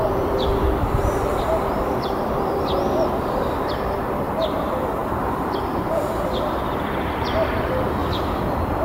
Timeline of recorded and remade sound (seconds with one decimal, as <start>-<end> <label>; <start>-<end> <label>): 0.0-3.5 remade; 3.5-5.0 recorded; 5.0-6.8 remade; 6.8-8.0 recorded; 8.0-8.8 remade